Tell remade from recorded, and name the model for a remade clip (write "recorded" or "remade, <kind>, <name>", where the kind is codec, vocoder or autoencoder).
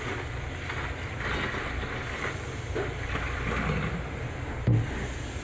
recorded